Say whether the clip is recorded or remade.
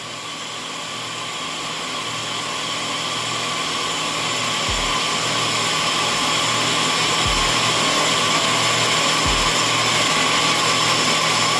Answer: recorded